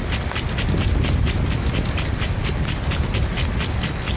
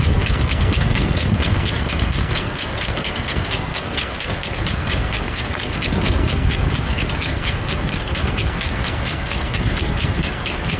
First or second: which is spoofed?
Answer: second